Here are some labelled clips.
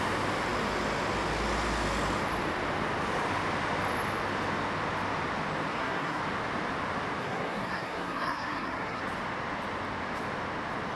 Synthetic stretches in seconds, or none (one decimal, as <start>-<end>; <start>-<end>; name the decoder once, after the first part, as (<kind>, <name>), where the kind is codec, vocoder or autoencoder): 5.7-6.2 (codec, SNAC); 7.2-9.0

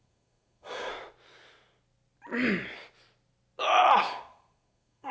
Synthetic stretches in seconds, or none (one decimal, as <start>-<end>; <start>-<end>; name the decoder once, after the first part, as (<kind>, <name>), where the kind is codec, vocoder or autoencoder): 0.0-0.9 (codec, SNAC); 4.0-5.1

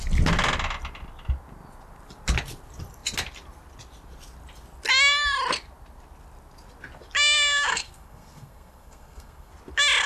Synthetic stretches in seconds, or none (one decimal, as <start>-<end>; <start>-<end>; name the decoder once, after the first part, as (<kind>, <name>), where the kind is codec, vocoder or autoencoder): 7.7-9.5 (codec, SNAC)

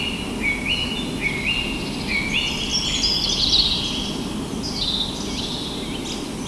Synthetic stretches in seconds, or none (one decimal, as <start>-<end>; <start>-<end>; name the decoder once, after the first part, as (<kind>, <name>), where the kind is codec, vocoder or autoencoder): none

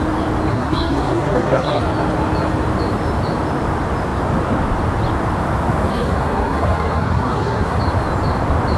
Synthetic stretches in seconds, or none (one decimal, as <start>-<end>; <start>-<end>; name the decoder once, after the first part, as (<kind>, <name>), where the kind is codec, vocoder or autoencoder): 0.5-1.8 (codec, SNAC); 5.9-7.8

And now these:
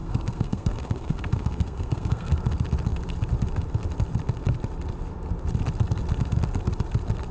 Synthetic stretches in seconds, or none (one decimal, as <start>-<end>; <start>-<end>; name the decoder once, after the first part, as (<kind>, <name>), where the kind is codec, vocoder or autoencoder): 0.0-2.3 (codec, SNAC)

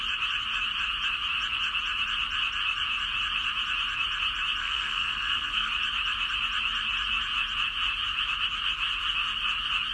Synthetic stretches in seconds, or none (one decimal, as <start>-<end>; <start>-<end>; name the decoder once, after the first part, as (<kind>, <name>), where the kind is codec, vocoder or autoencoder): 4.6-5.7 (codec, SNAC)

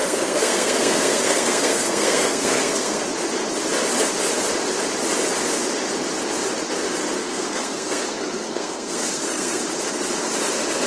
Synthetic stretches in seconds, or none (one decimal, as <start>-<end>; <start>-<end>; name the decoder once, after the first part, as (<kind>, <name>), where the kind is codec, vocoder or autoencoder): 0.0-3.0 (codec, SNAC); 7.2-9.6